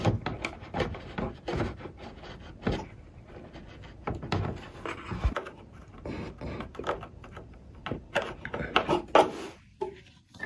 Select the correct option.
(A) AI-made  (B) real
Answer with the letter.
B